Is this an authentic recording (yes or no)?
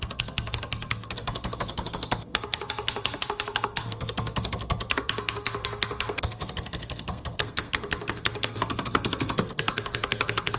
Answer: no